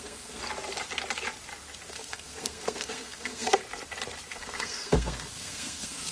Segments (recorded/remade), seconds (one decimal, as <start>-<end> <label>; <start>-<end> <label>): 0.0-0.4 remade; 0.4-1.9 recorded; 1.9-3.6 remade; 3.6-4.3 recorded; 4.3-6.1 remade